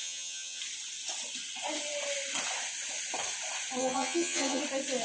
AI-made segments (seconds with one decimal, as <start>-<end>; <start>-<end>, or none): 0.0-0.6; 3.8-4.6

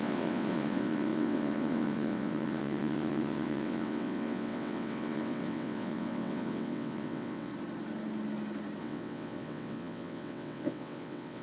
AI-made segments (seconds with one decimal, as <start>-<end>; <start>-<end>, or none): 0.0-7.5; 8.8-11.4

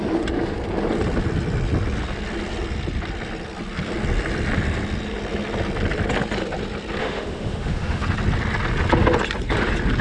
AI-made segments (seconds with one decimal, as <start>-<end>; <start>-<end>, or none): 7.0-8.0

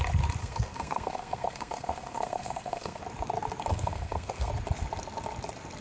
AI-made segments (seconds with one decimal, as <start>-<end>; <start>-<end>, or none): 0.4-3.0; 3.7-4.5